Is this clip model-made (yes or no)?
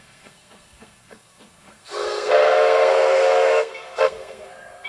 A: yes